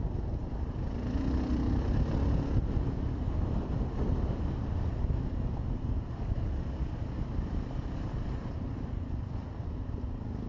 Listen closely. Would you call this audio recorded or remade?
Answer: recorded